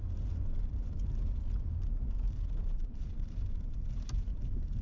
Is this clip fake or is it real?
fake